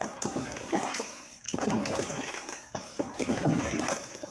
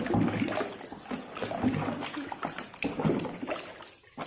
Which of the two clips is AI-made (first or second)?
first